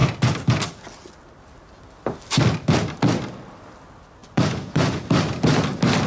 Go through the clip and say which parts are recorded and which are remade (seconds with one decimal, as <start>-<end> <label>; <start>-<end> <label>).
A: 0.0-4.2 recorded; 4.2-5.0 remade; 5.0-6.1 recorded